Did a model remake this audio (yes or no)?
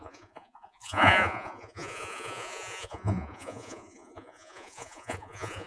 yes